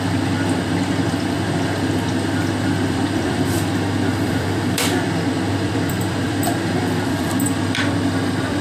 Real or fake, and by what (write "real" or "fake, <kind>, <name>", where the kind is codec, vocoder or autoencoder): fake, vocoder, BigVGAN v2